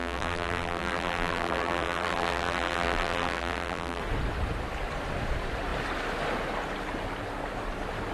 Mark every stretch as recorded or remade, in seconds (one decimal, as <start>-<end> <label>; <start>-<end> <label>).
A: 0.0-4.0 remade; 4.0-8.1 recorded

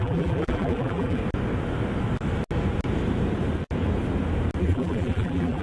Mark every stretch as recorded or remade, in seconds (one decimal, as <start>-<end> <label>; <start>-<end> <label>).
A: 0.0-1.2 remade; 1.2-4.6 recorded; 4.6-5.6 remade

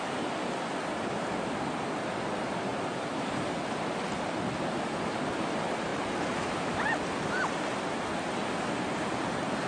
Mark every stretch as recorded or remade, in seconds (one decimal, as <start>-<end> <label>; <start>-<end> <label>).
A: 0.0-5.9 recorded; 5.9-6.5 remade; 6.5-9.7 recorded

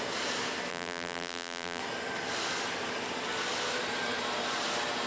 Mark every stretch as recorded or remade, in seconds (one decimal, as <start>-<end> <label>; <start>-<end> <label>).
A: 0.0-0.7 recorded; 0.7-1.8 remade; 1.8-5.1 recorded

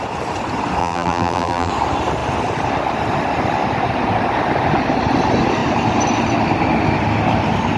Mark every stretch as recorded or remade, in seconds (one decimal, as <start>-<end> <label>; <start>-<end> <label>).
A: 0.0-0.8 recorded; 0.8-1.7 remade; 1.7-7.8 recorded